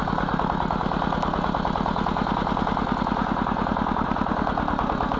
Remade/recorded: recorded